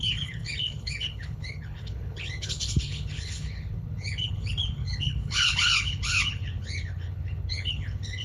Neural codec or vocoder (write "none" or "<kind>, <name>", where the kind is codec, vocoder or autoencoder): codec, HILCodec